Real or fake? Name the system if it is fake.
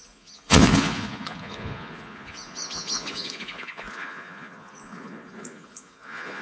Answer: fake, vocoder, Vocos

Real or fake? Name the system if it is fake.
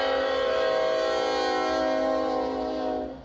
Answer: real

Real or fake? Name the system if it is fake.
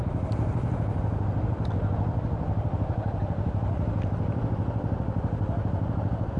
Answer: real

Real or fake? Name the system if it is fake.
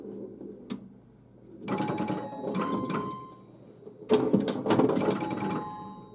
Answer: real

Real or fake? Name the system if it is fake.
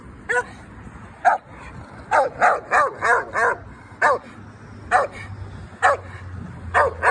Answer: real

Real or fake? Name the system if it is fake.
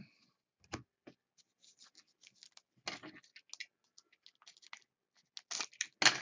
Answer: real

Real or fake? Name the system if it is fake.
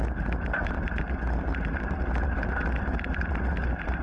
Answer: real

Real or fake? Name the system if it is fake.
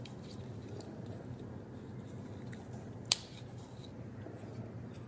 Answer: real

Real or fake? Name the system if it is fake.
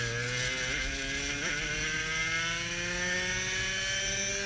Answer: real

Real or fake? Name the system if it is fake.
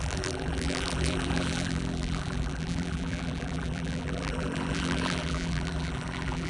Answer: fake, vocoder, BigVGAN v2